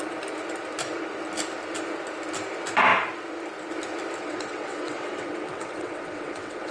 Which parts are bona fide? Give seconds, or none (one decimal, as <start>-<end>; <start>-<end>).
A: 0.0-4.2